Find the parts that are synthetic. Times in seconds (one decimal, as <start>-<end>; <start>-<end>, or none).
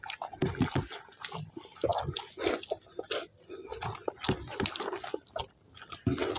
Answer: none